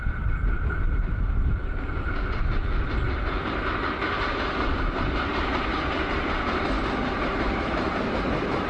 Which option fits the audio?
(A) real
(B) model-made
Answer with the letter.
A